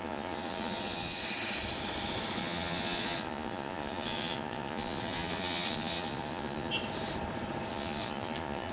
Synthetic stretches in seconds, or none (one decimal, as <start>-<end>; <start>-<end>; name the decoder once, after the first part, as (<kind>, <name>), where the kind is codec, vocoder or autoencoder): 0.0-1.2 (vocoder, Vocos); 2.4-6.7; 7.7-8.7